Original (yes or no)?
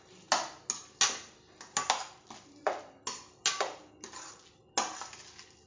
yes